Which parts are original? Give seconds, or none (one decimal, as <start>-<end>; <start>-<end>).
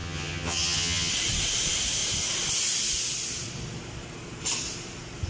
1.1-5.3